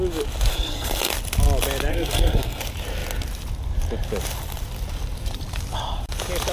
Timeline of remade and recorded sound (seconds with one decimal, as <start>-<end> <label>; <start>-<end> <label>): 0.0-0.5 recorded; 0.5-1.1 remade; 1.1-1.9 recorded; 1.9-2.6 remade; 2.6-6.5 recorded